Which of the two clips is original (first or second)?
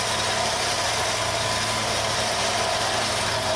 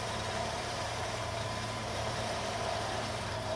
first